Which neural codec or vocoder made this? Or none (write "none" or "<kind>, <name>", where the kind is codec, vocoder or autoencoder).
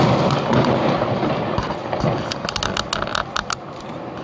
none